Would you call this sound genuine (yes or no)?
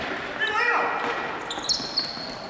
yes